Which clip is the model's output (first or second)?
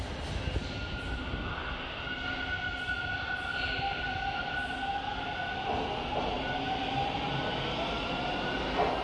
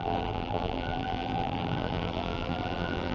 second